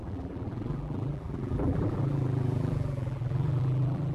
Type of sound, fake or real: fake